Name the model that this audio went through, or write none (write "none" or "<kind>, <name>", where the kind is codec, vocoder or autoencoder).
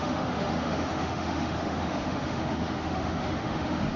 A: autoencoder, DAC-VAE